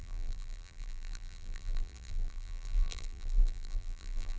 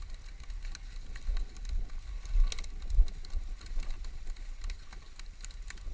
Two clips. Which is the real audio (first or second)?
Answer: second